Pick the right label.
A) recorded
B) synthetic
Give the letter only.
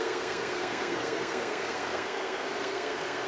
B